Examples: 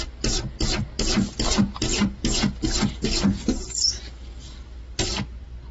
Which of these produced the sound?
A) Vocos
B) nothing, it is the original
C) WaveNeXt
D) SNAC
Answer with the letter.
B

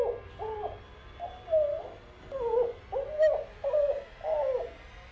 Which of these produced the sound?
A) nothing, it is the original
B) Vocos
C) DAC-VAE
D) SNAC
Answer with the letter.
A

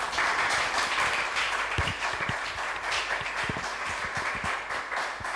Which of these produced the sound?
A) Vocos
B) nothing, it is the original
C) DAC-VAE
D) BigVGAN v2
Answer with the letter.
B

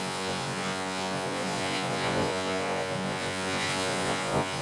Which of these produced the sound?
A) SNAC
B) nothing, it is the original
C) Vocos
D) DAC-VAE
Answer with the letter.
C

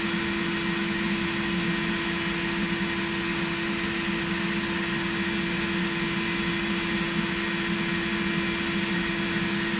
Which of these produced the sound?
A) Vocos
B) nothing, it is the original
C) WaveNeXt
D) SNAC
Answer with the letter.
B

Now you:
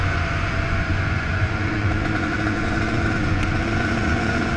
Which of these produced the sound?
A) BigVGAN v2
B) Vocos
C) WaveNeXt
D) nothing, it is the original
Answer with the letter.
B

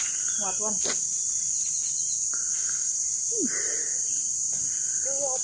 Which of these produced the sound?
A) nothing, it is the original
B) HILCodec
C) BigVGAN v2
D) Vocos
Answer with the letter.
A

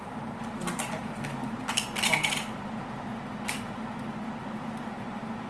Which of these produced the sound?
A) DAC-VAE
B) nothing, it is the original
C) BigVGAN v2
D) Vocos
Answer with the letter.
B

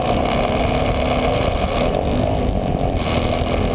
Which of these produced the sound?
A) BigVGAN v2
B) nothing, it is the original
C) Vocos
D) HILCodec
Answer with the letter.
B